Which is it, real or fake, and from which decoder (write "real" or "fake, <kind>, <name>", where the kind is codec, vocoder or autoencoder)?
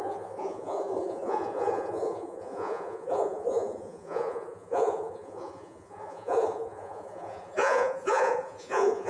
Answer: fake, vocoder, Vocos